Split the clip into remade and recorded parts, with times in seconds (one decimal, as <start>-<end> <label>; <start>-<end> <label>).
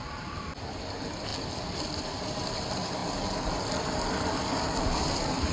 0.0-5.5 recorded